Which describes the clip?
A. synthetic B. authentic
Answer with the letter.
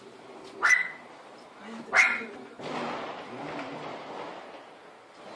B